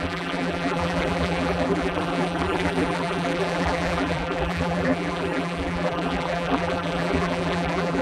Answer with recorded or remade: remade